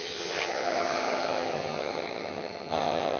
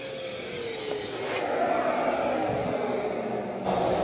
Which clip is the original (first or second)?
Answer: second